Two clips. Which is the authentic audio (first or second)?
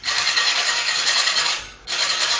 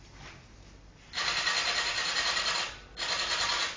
second